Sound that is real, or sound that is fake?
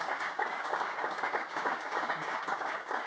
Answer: fake